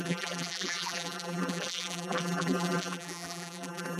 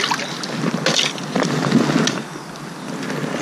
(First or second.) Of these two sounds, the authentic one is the second